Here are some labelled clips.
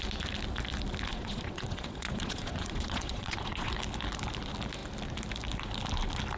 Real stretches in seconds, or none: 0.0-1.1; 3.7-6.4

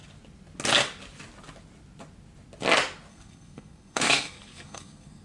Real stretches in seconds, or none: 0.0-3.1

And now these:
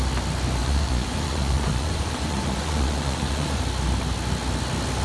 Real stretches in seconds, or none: 0.0-0.6; 3.6-5.0

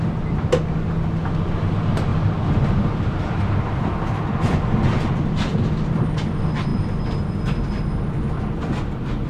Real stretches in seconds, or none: 0.0-9.3

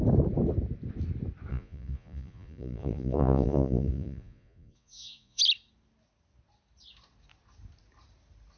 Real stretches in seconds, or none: 0.0-1.5; 5.4-8.6

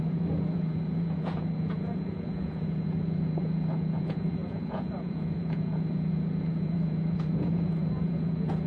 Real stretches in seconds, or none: none